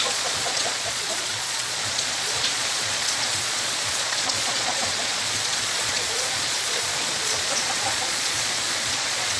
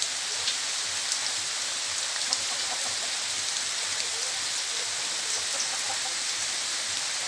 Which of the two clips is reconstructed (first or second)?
first